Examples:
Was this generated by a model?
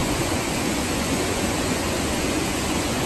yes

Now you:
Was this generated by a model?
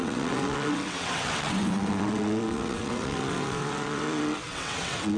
yes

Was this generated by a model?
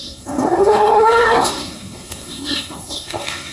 yes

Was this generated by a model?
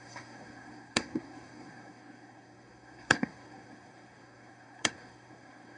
yes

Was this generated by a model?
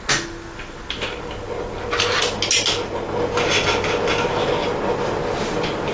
no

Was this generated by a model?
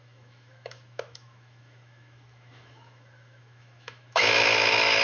yes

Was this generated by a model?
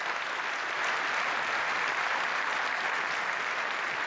no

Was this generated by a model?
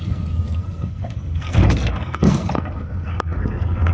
yes